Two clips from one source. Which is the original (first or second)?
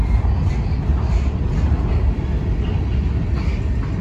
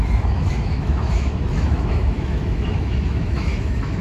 first